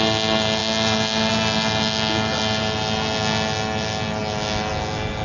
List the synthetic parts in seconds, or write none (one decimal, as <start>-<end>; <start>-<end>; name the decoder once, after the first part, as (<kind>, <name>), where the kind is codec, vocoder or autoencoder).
none

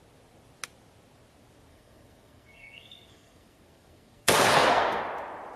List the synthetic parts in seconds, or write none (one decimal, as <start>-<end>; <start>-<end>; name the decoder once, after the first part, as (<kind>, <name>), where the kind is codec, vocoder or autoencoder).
1.7-5.0 (codec, SNAC)

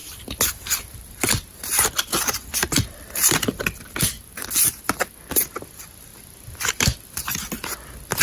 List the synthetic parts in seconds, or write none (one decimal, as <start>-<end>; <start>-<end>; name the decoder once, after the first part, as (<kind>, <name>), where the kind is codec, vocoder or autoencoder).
0.0-1.3 (vocoder, BigVGAN v2)

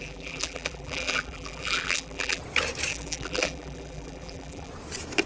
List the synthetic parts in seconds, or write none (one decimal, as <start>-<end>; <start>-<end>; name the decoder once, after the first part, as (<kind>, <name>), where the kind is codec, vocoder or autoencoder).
0.0-2.4 (vocoder, BigVGAN v2); 2.9-4.7

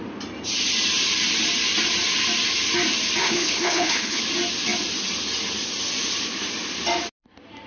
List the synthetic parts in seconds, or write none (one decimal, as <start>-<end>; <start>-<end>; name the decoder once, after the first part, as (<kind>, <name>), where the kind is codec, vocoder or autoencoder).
3.2-4.2 (codec, HILCodec)

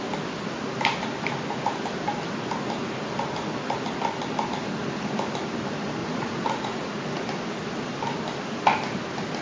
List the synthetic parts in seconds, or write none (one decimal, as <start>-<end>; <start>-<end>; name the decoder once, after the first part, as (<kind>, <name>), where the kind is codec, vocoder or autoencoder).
6.0-7.2 (vocoder, Vocos)